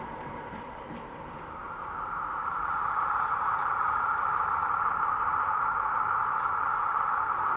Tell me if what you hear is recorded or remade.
remade